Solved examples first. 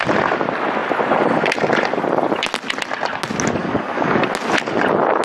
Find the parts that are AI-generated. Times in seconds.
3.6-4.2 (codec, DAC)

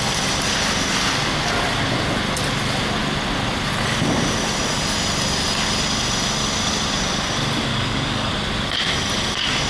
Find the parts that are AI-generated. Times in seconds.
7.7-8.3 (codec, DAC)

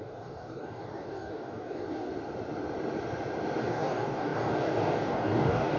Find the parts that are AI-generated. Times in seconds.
0.0-2.1 (codec, DAC); 3.6-5.8

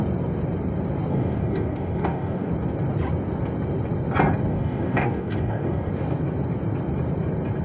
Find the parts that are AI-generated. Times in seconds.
1.1-2.5 (codec, DAC); 4.5-5.9